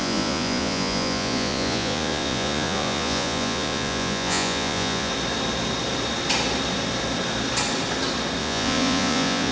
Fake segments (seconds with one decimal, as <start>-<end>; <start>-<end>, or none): 0.0-5.1; 8.4-9.5

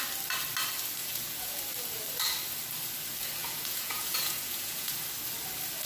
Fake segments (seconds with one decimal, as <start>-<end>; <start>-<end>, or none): 1.0-1.6; 3.4-5.0

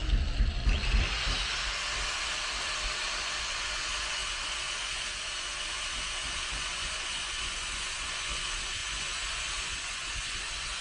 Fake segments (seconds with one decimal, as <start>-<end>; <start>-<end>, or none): 3.2-10.8

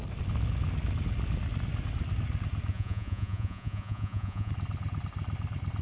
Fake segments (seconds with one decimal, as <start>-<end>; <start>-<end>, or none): 2.7-4.5